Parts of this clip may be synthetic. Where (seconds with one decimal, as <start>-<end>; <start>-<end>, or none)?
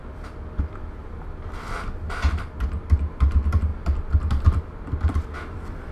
none